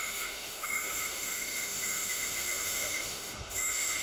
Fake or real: fake